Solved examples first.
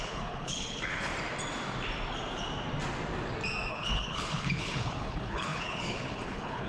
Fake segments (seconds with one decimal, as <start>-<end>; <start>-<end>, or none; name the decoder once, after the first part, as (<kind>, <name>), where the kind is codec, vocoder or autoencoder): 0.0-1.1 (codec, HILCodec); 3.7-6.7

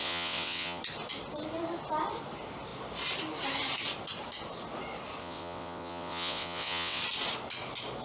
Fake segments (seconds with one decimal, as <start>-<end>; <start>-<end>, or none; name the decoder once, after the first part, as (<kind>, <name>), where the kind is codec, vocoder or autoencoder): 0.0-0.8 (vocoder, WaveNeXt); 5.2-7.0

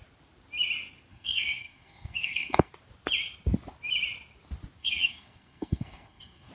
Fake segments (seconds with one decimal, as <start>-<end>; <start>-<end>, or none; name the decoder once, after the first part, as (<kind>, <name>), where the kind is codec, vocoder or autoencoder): 1.1-2.7 (codec, SNAC); 4.8-6.5